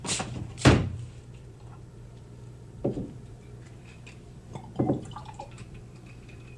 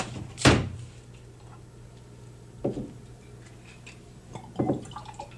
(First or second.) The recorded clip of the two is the second